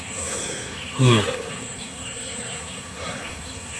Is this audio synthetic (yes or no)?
yes